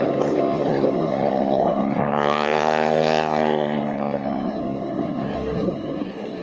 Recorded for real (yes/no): no